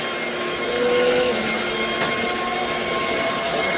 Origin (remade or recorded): recorded